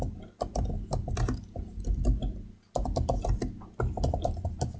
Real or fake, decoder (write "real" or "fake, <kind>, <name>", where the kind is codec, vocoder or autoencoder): real